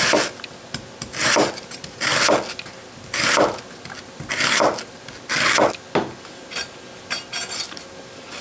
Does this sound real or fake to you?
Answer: real